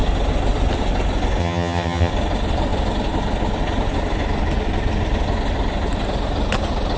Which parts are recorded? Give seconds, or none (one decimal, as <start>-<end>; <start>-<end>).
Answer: 0.0-1.4; 2.1-7.0